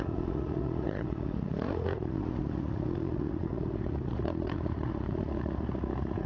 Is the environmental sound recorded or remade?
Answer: remade